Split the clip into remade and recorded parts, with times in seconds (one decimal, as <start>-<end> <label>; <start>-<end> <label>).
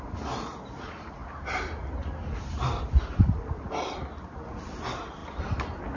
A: 0.0-1.2 remade; 1.2-2.0 recorded; 2.0-5.2 remade; 5.2-6.0 recorded